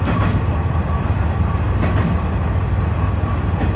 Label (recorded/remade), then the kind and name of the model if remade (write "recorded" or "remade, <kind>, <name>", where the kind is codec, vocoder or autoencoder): recorded